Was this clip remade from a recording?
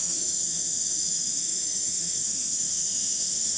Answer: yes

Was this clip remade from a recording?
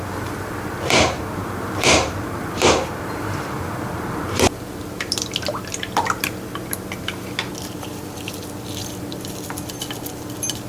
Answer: yes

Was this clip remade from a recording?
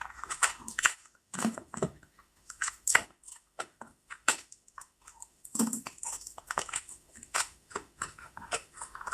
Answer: yes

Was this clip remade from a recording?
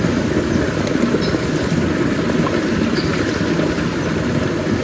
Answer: no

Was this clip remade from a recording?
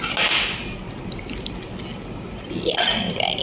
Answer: no